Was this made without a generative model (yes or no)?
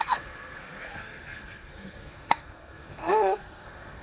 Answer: no